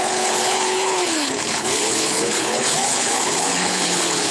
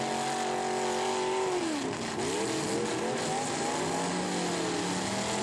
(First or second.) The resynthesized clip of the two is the first